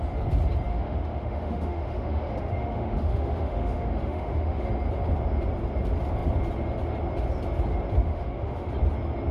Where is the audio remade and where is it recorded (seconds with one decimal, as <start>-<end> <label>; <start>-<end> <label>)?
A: 0.0-0.7 recorded; 0.7-4.7 remade; 4.7-8.0 recorded; 8.0-8.7 remade; 8.7-9.3 recorded

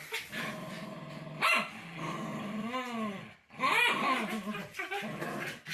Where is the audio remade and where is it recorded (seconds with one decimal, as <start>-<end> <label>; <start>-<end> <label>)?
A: 0.0-3.7 recorded; 3.7-4.6 remade; 4.6-5.7 recorded

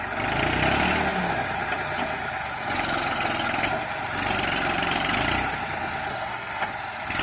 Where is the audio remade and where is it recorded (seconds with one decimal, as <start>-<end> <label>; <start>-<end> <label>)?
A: 0.0-6.1 recorded; 6.1-6.7 remade; 6.7-7.2 recorded

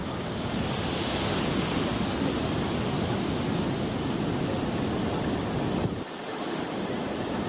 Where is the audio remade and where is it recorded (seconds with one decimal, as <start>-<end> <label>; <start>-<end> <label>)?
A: 0.0-5.8 recorded; 5.8-7.5 remade

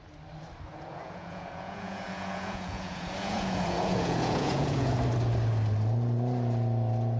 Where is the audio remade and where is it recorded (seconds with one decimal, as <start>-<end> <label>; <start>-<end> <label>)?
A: 0.0-0.7 recorded; 0.7-5.0 remade; 5.0-7.2 recorded

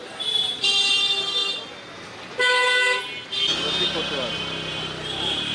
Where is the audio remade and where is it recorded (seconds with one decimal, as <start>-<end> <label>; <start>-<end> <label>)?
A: 0.0-1.4 remade; 1.4-4.7 recorded; 4.7-5.5 remade

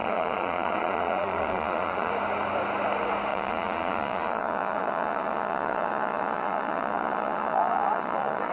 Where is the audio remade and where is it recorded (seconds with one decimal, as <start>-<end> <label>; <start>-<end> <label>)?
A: 0.0-2.1 remade; 2.1-3.3 recorded; 3.3-8.5 remade

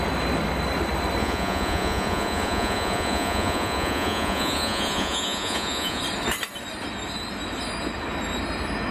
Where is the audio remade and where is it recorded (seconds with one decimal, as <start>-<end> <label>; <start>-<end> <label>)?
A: 0.0-1.2 recorded; 1.2-6.0 remade; 6.0-8.9 recorded